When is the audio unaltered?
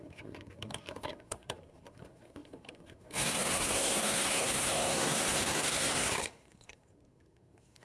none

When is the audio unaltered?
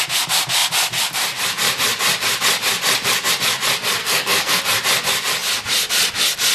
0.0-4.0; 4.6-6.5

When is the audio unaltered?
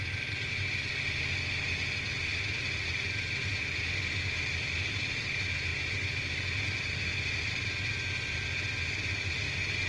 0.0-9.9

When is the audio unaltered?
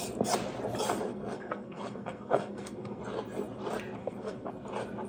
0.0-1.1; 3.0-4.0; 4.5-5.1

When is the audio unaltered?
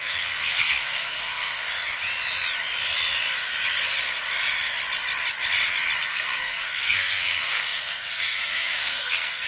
1.5-6.0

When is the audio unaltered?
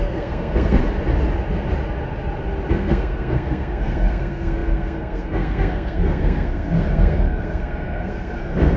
0.8-2.7